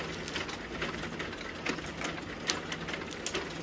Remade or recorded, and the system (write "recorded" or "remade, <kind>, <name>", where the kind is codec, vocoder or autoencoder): recorded